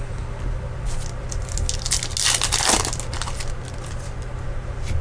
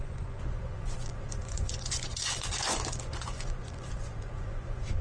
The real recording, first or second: first